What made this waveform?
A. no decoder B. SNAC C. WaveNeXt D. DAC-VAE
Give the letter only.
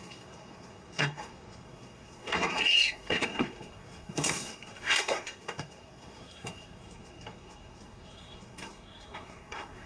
B